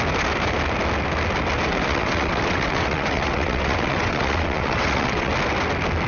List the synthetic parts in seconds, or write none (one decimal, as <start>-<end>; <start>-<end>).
1.7-5.3